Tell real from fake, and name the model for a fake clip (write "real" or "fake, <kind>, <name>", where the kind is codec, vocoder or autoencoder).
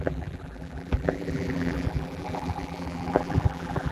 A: fake, vocoder, BigVGAN v2